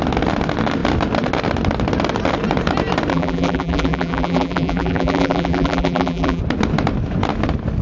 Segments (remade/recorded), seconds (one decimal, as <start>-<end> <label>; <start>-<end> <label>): 0.0-3.1 recorded; 3.1-6.4 remade; 6.4-7.8 recorded

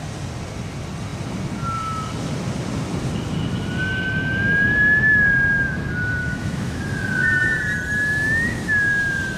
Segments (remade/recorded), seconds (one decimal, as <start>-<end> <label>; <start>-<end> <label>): 0.0-6.2 recorded; 6.2-6.8 remade; 6.8-9.4 recorded

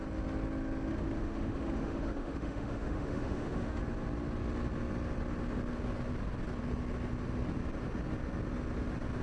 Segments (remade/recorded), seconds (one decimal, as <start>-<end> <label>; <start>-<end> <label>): 0.0-0.9 recorded; 0.9-3.8 remade; 3.8-9.2 recorded

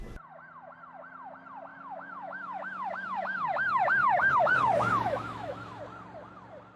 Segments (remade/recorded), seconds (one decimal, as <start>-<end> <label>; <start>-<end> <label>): 0.0-1.7 recorded; 1.7-5.8 remade; 5.8-6.8 recorded

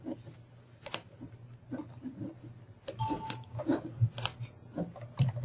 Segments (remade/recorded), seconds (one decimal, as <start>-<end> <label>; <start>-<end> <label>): 0.0-3.1 recorded; 3.1-3.8 remade; 3.8-5.4 recorded